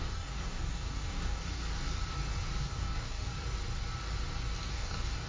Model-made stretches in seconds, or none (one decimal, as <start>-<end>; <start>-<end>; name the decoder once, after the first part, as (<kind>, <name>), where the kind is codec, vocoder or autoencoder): 0.0-1.6 (codec, DAC); 2.6-3.3; 4.7-5.3